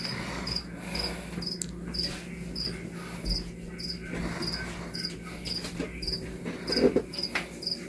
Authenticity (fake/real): real